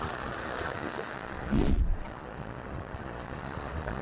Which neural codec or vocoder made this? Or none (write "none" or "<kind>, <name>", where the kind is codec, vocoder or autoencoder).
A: vocoder, Vocos